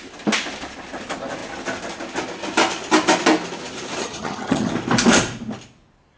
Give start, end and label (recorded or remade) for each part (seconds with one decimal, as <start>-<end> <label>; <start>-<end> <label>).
0.0-4.0 recorded; 4.0-4.7 remade; 4.7-6.2 recorded